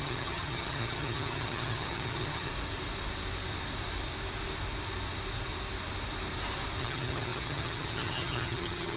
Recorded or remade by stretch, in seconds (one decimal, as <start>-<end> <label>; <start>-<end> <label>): 0.0-2.5 remade; 2.5-6.8 recorded; 6.8-9.0 remade

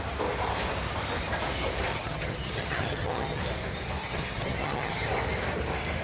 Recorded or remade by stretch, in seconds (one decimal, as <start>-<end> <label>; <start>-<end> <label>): 0.0-1.9 recorded; 1.9-3.4 remade; 3.4-4.0 recorded; 4.0-5.1 remade; 5.1-6.0 recorded

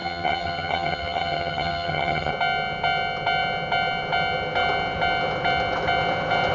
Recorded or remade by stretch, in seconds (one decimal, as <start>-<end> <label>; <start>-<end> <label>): 0.0-2.3 remade; 2.3-6.5 recorded

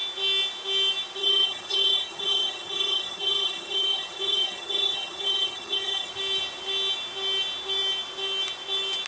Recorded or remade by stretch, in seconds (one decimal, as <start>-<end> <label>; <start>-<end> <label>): 0.0-1.2 recorded; 1.2-6.1 remade; 6.1-9.1 recorded

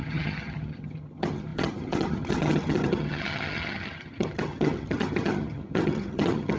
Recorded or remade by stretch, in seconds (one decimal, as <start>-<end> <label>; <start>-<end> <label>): 0.0-6.6 remade